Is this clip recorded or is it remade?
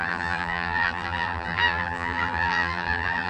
remade